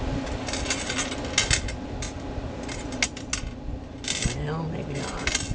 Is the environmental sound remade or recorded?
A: recorded